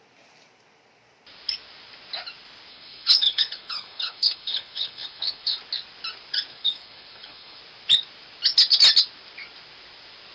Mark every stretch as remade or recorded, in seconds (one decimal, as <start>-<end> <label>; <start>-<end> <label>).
0.0-2.7 recorded; 2.7-5.6 remade; 5.6-6.5 recorded; 6.5-7.6 remade; 7.6-10.3 recorded